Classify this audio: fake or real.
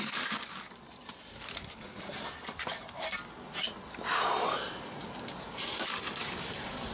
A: real